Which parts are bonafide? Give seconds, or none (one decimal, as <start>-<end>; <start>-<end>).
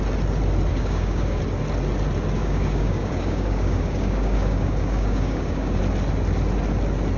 0.0-0.7; 1.4-2.4; 5.8-7.2